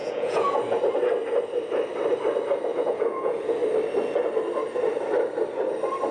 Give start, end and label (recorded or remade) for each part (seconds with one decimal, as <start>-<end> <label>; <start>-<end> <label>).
0.0-0.6 remade; 0.6-2.7 recorded; 2.7-3.6 remade; 3.6-6.1 recorded